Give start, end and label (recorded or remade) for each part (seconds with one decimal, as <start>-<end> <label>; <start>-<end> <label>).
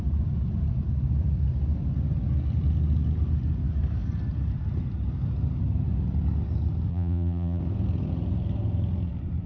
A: 0.0-6.9 recorded; 6.9-7.6 remade; 7.6-9.5 recorded